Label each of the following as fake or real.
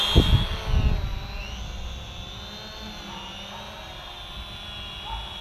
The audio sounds real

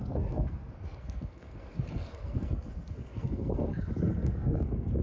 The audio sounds fake